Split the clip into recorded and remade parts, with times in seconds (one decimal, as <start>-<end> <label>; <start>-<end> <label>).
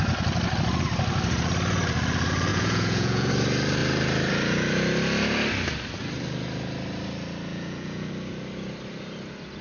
0.0-2.5 recorded; 2.5-3.3 remade; 3.3-7.5 recorded; 7.5-8.1 remade; 8.1-9.6 recorded